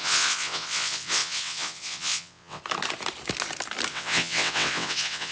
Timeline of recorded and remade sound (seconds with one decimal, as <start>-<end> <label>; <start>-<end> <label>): 0.0-2.6 remade; 2.6-3.9 recorded; 3.9-5.3 remade